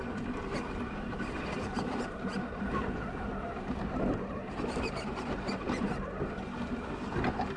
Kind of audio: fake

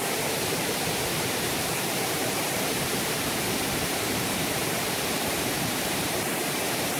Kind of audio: fake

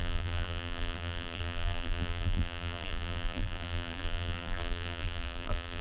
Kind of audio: fake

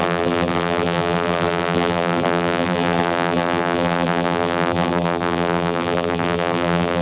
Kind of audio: fake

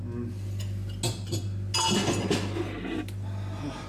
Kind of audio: real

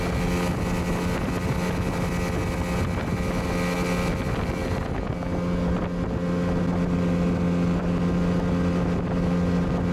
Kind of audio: real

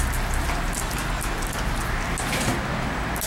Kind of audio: real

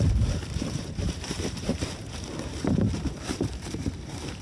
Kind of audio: fake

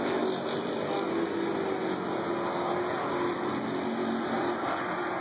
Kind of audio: real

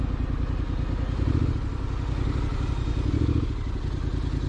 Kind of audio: real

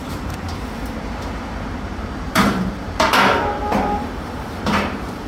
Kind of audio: fake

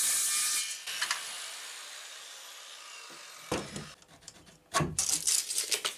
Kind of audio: real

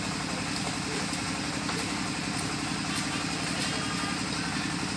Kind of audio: real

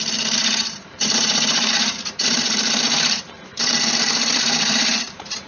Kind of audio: fake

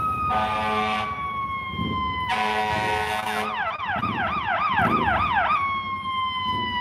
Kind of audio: real